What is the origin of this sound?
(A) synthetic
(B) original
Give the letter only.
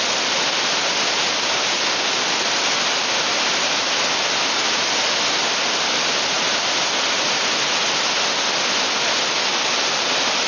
B